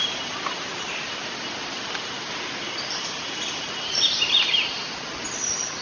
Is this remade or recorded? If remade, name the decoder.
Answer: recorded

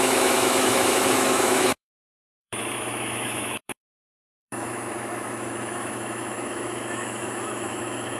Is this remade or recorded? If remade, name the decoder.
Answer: remade, autoencoder, DAC-VAE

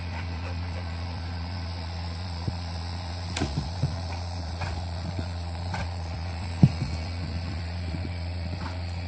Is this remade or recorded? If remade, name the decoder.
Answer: remade, vocoder, Vocos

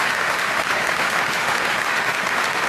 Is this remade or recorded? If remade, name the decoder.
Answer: remade, autoencoder, DAC-VAE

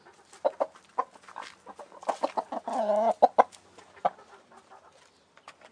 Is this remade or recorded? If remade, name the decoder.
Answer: recorded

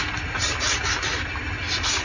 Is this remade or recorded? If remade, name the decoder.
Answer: recorded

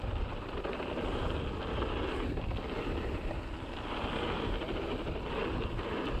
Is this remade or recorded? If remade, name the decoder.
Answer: recorded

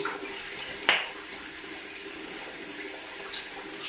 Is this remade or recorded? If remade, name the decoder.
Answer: recorded